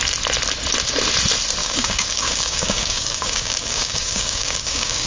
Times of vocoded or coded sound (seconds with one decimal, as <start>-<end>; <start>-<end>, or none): 1.6-5.1